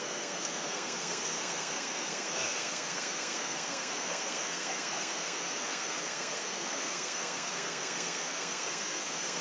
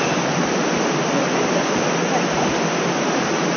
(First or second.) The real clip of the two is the second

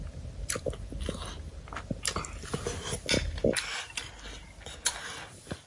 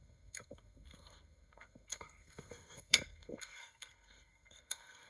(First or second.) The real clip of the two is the first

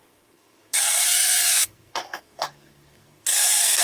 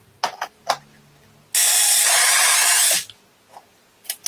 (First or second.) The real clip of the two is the second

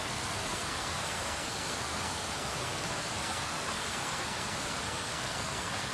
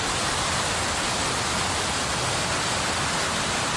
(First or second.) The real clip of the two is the second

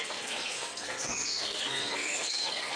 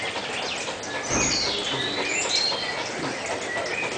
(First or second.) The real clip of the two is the second